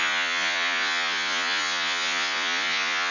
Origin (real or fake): fake